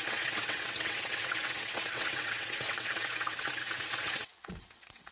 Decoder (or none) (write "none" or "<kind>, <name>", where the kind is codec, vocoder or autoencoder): vocoder, WaveNeXt